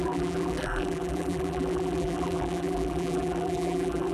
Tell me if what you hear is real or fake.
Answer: fake